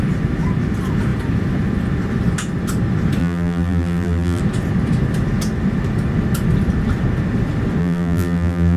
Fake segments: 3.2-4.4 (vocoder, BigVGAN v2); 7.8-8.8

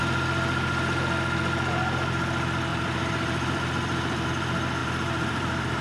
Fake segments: 2.7-4.3 (vocoder, BigVGAN v2); 4.8-5.8

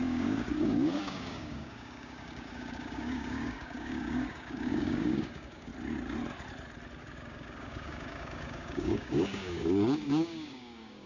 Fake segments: 0.0-5.7 (codec, DAC); 7.0-11.1

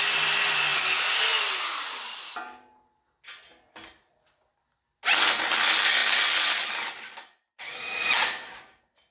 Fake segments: none

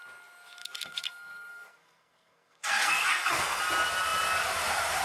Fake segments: 0.6-3.6 (codec, SNAC)

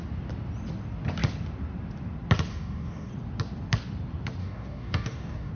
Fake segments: 2.5-3.1 (codec, DAC); 4.4-5.5

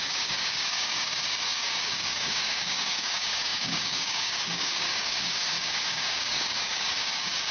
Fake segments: 0.0-7.5 (codec, DAC)

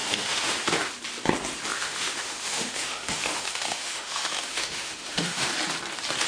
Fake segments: 0.0-0.9 (autoencoder, DAC-VAE); 1.7-5.5